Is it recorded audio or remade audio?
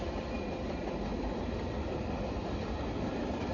recorded